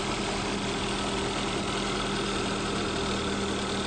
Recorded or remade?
recorded